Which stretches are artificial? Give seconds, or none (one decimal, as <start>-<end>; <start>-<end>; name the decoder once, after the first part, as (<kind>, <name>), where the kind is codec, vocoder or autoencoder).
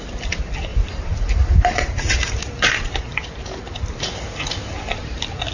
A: 0.7-2.4 (vocoder, BigVGAN v2)